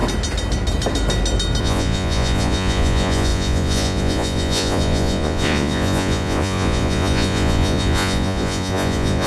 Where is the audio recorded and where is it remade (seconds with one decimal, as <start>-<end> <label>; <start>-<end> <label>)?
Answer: 0.0-1.6 recorded; 1.6-9.3 remade

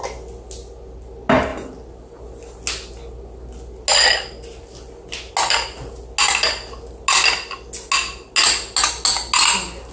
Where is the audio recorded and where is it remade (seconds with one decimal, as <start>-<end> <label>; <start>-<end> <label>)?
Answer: 0.0-9.9 recorded